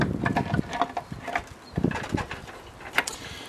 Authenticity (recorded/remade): recorded